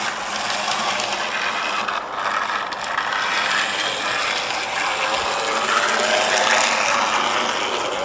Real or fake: real